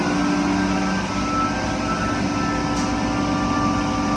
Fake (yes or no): no